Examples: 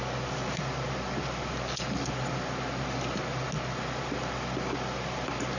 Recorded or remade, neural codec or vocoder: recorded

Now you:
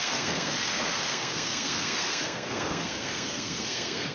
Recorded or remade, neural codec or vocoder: remade, codec, SNAC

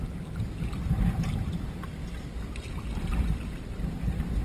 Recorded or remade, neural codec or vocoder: recorded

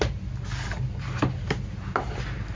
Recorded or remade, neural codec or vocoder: recorded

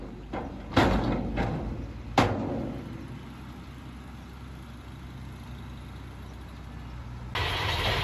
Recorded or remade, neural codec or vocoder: recorded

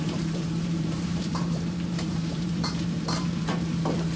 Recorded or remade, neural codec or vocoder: remade, vocoder, BigVGAN v2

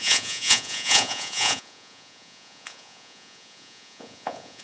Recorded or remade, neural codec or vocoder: remade, vocoder, Vocos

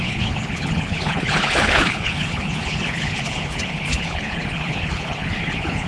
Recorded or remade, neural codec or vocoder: remade, codec, HILCodec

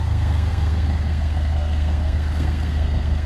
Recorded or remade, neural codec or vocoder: remade, codec, SNAC